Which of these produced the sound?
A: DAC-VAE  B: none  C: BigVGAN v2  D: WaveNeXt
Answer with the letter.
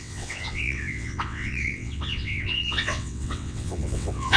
D